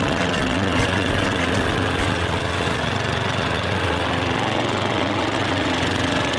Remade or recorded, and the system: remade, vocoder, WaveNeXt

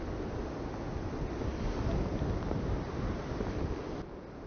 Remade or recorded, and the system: recorded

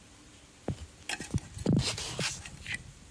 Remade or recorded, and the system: recorded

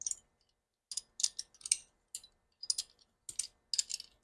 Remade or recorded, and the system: recorded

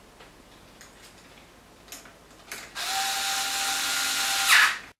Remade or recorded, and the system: recorded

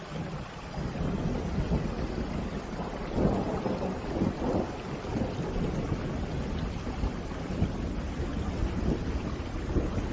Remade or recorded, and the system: recorded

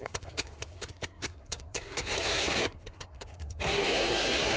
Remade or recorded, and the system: remade, codec, SNAC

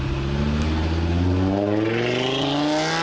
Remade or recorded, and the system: recorded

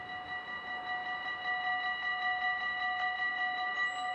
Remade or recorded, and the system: recorded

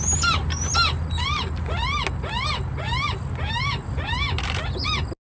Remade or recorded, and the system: recorded